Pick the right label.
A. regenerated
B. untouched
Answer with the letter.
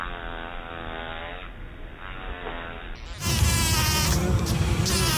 B